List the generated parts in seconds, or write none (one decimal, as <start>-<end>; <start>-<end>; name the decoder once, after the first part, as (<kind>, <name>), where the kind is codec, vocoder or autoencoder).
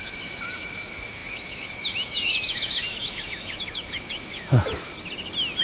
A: 0.0-4.9 (autoencoder, DAC-VAE)